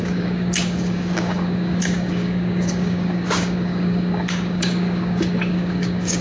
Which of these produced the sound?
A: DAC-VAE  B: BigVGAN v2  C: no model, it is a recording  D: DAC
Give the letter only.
D